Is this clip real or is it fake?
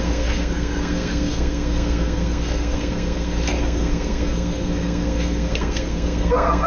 fake